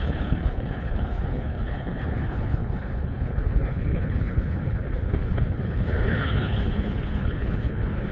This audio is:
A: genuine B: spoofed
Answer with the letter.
B